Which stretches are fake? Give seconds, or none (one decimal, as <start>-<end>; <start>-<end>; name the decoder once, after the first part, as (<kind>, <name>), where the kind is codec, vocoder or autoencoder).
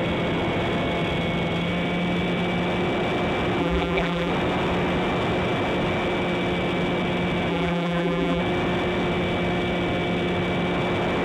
3.6-4.3 (vocoder, BigVGAN v2); 7.5-8.4